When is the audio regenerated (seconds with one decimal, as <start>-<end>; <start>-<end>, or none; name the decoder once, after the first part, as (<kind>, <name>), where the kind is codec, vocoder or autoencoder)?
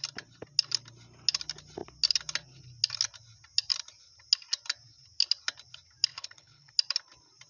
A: 6.1-6.7 (codec, HILCodec)